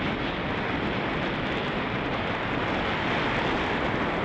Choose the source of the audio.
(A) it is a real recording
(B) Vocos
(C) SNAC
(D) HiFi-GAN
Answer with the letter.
A